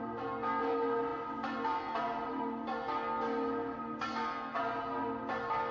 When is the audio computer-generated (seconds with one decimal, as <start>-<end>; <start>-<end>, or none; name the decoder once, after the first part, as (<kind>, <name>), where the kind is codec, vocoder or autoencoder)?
none

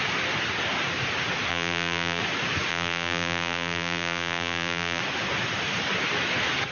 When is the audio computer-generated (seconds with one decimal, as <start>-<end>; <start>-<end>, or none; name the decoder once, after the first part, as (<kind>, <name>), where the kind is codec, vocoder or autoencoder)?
1.5-2.2 (vocoder, BigVGAN v2); 2.7-5.0

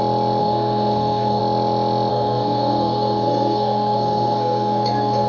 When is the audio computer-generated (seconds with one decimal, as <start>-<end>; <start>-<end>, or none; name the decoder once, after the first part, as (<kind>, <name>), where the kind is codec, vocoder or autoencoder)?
0.4-1.4 (codec, SNAC); 2.1-5.3

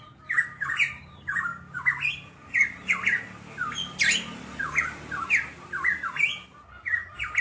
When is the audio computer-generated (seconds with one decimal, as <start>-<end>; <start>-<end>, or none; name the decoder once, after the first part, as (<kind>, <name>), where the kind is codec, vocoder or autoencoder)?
none

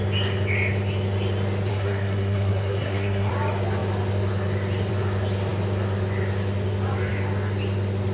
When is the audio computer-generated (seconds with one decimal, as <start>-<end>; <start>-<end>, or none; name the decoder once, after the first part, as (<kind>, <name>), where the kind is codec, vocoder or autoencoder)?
1.7-3.3 (codec, SNAC)

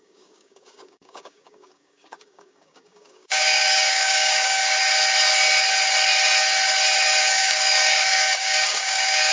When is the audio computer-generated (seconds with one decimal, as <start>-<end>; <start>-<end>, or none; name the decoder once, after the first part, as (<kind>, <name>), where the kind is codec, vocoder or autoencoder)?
0.0-4.6 (codec, DAC); 7.2-9.3

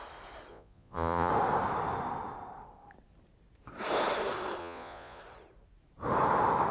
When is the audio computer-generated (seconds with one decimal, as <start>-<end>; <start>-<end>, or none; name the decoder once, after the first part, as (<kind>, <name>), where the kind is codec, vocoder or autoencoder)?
0.5-1.3 (vocoder, Vocos); 4.6-5.2

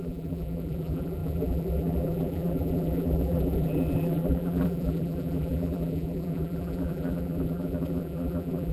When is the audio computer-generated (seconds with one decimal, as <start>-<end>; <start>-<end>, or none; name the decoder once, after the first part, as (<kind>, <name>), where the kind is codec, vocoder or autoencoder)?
0.0-8.7 (vocoder, BigVGAN v2)